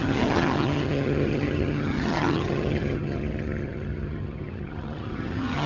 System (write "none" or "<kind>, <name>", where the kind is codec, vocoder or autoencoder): vocoder, HiFi-GAN